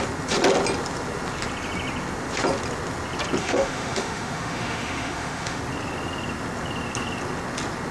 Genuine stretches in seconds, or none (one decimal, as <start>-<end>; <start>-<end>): 0.0-3.4; 5.6-7.9